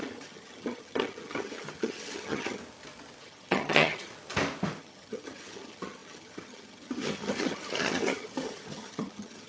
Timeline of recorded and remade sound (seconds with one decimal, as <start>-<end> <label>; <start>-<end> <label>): 0.0-2.6 remade; 2.6-3.2 recorded; 3.2-4.1 remade; 4.1-4.8 recorded; 4.8-9.5 remade